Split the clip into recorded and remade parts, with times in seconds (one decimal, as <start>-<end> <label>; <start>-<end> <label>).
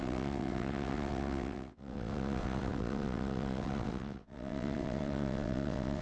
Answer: 0.0-6.0 remade